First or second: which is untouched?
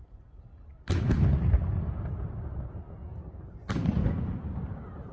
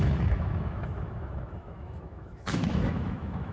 first